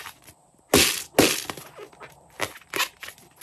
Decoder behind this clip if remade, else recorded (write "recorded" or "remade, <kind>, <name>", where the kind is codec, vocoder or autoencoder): recorded